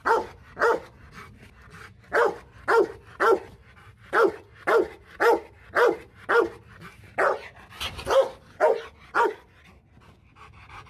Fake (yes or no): no